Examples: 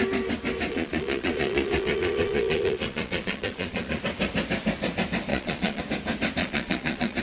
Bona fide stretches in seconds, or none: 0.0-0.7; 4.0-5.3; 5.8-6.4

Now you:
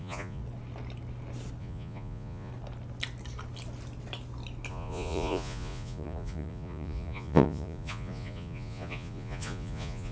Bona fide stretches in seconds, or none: 0.4-1.6; 2.5-4.7